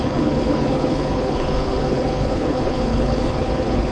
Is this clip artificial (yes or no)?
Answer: yes